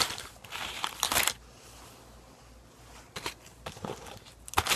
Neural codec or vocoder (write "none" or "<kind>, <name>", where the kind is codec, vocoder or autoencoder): none